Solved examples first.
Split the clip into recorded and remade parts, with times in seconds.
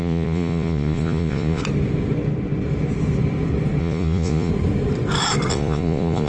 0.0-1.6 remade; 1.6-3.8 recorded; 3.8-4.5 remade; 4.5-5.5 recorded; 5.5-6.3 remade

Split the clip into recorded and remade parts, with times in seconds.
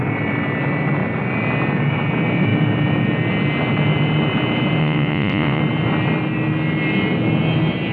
0.0-4.8 recorded; 4.8-5.6 remade; 5.6-7.9 recorded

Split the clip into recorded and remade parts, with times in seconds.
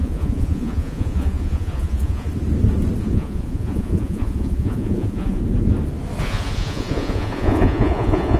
0.0-2.3 remade; 2.3-3.0 recorded; 3.0-5.4 remade; 5.4-6.2 recorded; 6.2-8.4 remade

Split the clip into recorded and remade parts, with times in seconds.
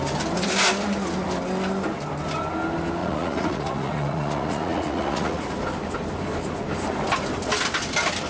0.0-3.0 recorded; 3.0-5.4 remade; 5.4-8.3 recorded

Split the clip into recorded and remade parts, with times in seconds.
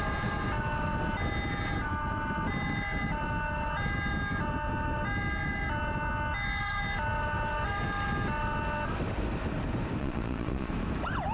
0.0-10.0 recorded; 10.0-10.7 remade; 10.7-11.3 recorded